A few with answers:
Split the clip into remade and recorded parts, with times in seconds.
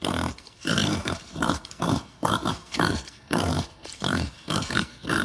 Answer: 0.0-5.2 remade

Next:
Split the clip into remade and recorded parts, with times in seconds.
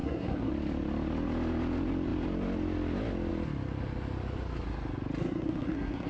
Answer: 0.0-0.5 remade; 0.5-5.2 recorded; 5.2-6.1 remade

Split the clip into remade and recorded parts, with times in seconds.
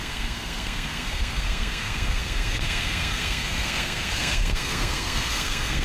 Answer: 0.0-5.8 remade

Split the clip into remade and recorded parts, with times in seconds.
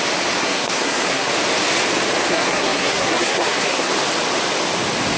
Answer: 0.0-0.4 recorded; 0.4-1.3 remade; 1.3-2.3 recorded; 2.3-3.9 remade; 3.9-5.2 recorded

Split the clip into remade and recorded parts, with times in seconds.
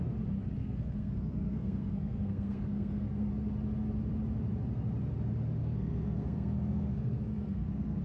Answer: 0.0-0.6 recorded; 0.6-3.3 remade; 3.3-5.6 recorded; 5.6-8.0 remade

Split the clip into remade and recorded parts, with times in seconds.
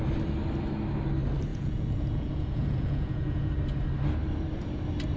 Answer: 0.0-1.5 recorded; 1.5-3.5 remade; 3.5-5.2 recorded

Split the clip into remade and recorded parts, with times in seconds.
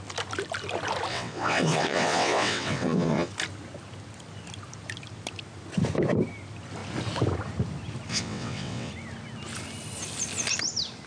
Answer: 0.0-1.1 recorded; 1.1-3.3 remade; 3.3-8.1 recorded; 8.1-8.9 remade; 8.9-11.1 recorded